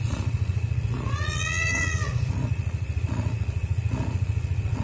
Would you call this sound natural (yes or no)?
no